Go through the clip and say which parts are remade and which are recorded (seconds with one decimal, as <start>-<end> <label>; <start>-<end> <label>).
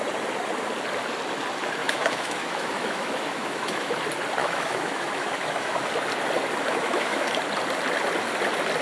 0.0-1.8 recorded; 1.8-3.9 remade; 3.9-4.4 recorded; 4.4-5.9 remade; 5.9-6.7 recorded; 6.7-7.3 remade; 7.3-8.8 recorded